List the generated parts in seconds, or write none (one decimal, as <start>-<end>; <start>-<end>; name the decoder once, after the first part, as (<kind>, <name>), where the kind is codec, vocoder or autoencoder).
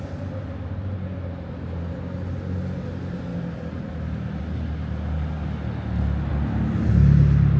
none